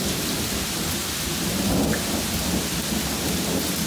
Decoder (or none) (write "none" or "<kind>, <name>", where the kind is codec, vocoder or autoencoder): none